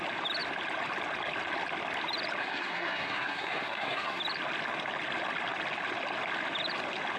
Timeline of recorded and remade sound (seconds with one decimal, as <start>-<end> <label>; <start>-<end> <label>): 0.0-2.4 recorded; 2.4-4.2 remade; 4.2-7.2 recorded